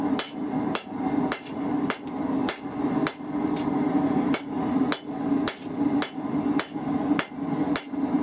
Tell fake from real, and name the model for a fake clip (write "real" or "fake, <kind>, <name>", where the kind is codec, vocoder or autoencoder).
real